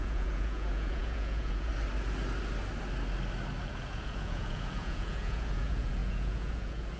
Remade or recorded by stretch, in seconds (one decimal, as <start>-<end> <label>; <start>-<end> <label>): 0.0-1.7 remade; 1.7-3.6 recorded; 3.6-7.0 remade